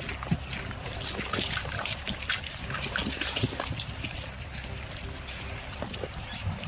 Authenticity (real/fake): real